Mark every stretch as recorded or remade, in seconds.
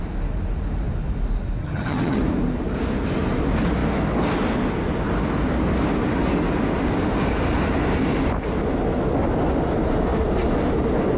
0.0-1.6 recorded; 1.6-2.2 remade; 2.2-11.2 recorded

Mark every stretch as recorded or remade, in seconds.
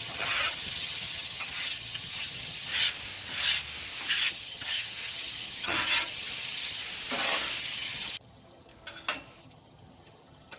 0.0-2.7 remade; 2.7-4.3 recorded; 4.3-6.8 remade; 6.8-7.6 recorded; 7.6-8.7 remade; 8.7-9.4 recorded; 9.4-10.6 remade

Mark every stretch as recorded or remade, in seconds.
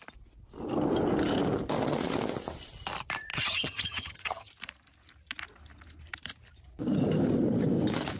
0.0-3.3 recorded; 3.3-4.5 remade; 4.5-8.2 recorded